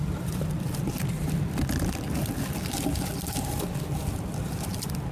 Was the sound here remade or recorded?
recorded